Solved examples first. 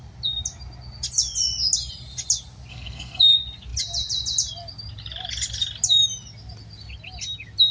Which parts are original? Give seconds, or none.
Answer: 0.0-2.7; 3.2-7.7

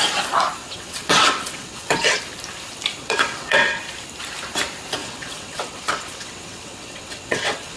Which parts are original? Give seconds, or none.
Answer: 0.0-0.6; 2.2-3.0; 3.8-5.0

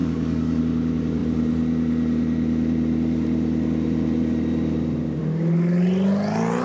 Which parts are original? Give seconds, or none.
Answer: 0.6-6.6